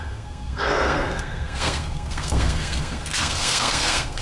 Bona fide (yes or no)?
no